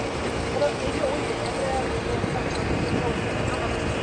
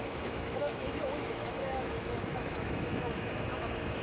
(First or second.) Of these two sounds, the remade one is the second